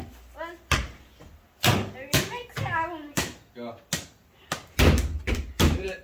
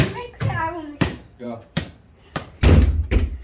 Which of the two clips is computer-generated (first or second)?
second